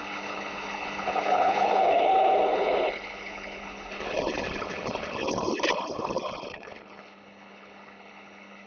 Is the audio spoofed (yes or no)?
yes